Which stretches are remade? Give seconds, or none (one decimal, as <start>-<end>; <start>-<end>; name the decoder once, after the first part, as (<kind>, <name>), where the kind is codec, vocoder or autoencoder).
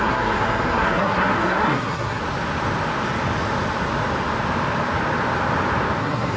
0.0-2.2 (codec, SNAC); 6.0-6.4